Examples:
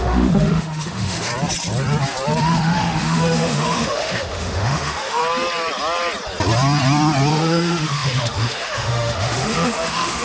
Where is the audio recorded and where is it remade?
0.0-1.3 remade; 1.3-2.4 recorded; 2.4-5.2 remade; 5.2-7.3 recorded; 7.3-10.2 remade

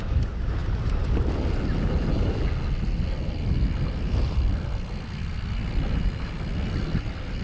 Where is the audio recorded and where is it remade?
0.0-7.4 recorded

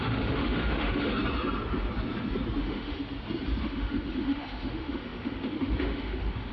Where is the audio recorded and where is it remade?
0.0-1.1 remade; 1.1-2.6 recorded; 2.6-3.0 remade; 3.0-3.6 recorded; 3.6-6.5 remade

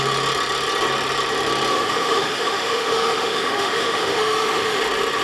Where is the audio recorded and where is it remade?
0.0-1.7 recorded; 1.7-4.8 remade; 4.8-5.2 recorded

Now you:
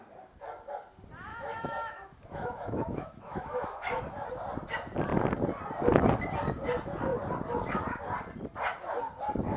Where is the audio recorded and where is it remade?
0.0-1.3 recorded; 1.3-4.0 remade; 4.0-9.6 recorded

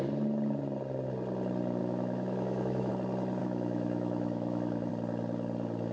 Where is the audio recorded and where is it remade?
0.0-1.8 recorded; 1.8-2.9 remade; 2.9-3.4 recorded; 3.4-4.9 remade; 4.9-5.9 recorded

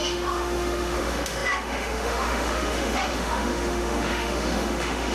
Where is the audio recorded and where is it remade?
0.0-5.1 remade